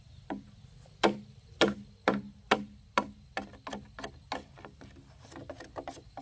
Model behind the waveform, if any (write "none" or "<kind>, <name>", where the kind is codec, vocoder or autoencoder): none